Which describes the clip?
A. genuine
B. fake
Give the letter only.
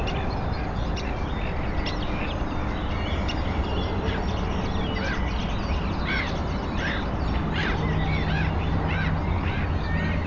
A